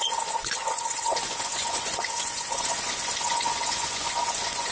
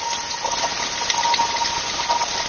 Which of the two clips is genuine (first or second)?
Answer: second